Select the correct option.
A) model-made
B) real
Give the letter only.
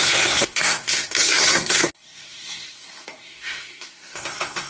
A